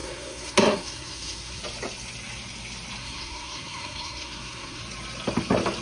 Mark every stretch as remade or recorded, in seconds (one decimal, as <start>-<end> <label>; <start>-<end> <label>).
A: 0.0-1.6 remade; 1.6-3.0 recorded; 3.0-4.8 remade; 4.8-5.8 recorded